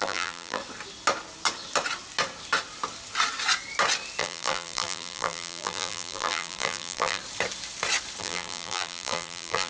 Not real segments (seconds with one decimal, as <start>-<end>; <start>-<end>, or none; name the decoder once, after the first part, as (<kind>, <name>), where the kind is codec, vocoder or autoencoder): 0.0-0.6 (vocoder, BigVGAN v2); 4.2-7.2; 8.2-9.7